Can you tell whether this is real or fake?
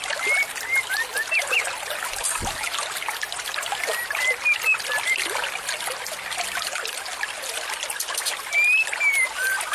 real